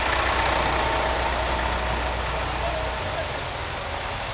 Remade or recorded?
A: recorded